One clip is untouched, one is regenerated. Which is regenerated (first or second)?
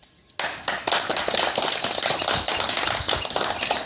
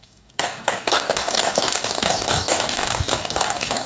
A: second